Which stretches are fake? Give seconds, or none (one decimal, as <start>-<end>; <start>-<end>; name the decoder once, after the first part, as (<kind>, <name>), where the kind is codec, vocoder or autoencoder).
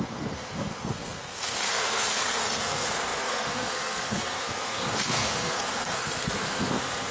0.0-7.1 (codec, SNAC)